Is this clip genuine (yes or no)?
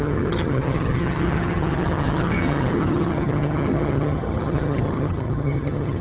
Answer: no